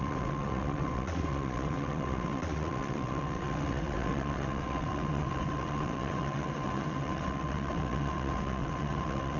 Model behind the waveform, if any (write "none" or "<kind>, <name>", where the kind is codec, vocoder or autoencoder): vocoder, WaveNeXt